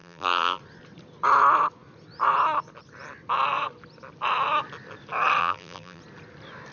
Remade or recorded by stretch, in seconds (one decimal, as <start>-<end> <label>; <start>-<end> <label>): 0.0-0.6 remade; 0.6-5.4 recorded; 5.4-6.0 remade; 6.0-6.7 recorded